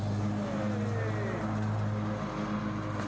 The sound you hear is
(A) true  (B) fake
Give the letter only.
A